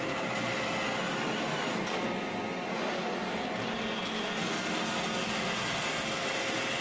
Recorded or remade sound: recorded